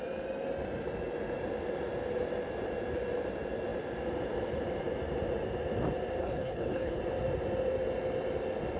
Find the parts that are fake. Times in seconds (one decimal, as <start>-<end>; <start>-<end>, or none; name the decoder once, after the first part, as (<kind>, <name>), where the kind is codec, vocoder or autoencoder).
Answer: 6.2-7.0 (codec, HILCodec)